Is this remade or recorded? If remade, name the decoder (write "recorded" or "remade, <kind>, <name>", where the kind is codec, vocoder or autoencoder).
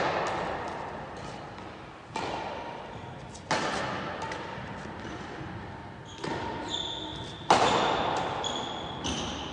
recorded